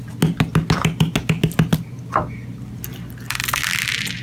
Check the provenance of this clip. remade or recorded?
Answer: recorded